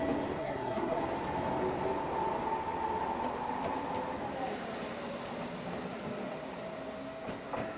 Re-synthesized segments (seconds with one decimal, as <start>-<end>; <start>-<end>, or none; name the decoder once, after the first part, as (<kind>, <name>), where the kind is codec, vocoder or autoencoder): 0.4-1.0 (codec, SNAC)